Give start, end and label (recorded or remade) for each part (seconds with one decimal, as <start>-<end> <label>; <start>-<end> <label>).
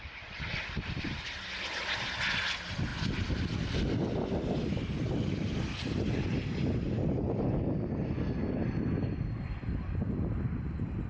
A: 0.0-11.1 recorded